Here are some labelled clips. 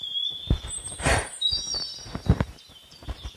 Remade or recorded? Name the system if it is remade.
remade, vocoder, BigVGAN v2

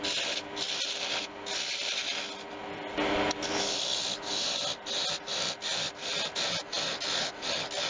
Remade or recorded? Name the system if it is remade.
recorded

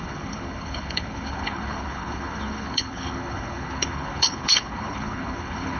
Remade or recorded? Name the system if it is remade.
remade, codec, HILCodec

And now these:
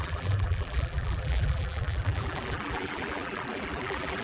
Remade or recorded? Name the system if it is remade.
remade, vocoder, BigVGAN v2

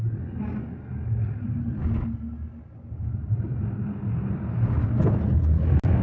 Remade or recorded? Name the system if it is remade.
recorded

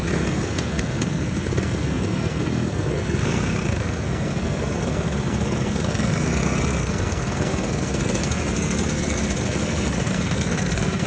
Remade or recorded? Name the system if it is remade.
remade, codec, SNAC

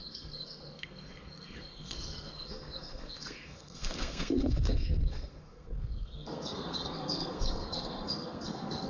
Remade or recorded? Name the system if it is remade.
remade, codec, SNAC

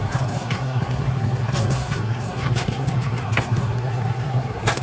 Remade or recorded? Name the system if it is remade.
remade, codec, SNAC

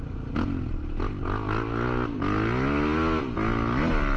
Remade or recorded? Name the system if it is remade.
recorded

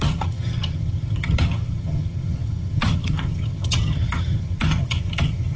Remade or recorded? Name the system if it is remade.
remade, vocoder, HiFi-GAN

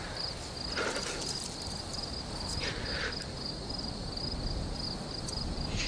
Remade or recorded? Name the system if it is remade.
recorded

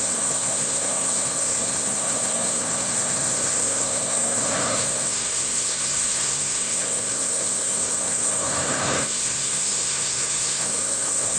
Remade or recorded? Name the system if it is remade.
remade, codec, SNAC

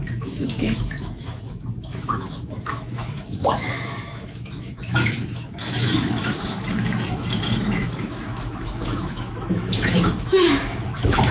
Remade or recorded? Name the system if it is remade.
remade, autoencoder, DAC-VAE